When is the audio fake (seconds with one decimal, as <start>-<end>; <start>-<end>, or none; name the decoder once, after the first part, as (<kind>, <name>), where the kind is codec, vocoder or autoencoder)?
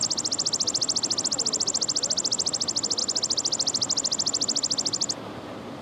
none